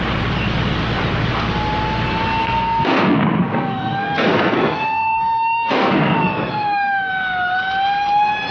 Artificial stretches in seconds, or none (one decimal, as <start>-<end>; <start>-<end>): 2.4-7.1

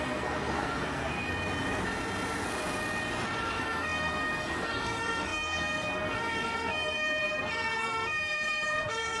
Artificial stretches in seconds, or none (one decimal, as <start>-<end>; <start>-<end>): 0.0-1.3; 3.4-9.2

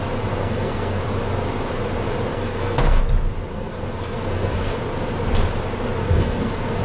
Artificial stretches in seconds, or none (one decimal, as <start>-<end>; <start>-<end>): 0.4-1.0; 2.3-3.0; 3.5-4.8; 6.0-6.8